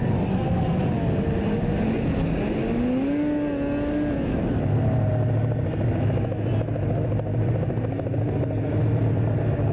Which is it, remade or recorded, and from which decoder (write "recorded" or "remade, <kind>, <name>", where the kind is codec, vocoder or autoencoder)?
recorded